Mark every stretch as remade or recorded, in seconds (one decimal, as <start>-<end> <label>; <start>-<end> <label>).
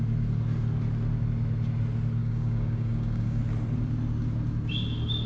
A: 0.0-2.2 recorded; 2.2-3.4 remade; 3.4-5.3 recorded